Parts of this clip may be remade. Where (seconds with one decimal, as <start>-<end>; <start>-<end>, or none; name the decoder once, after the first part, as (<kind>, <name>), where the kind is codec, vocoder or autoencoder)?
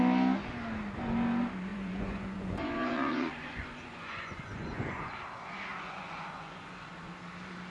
1.7-5.1 (vocoder, Vocos); 5.7-6.9